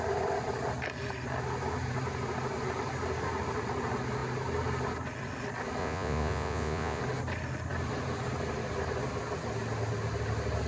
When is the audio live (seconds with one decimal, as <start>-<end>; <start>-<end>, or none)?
0.0-5.8; 7.0-10.7

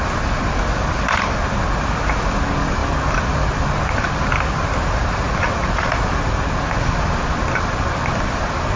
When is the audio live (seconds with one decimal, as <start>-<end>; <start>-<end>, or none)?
0.0-8.8

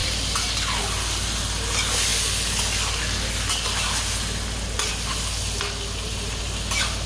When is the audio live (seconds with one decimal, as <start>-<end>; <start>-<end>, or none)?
0.0-7.1

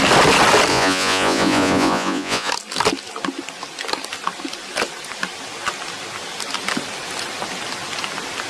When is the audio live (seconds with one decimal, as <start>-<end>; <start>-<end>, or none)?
0.0-0.7; 2.5-8.5

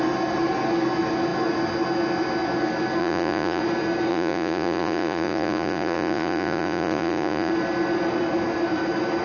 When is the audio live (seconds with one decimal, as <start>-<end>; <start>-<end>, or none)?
0.0-3.0; 3.6-4.1; 7.5-9.2

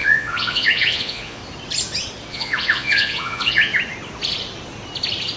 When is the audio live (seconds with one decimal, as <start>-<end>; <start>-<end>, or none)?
1.4-2.3; 3.7-5.4

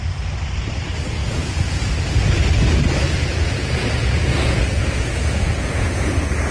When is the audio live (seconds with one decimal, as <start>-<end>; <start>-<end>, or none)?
0.0-1.2; 1.9-3.3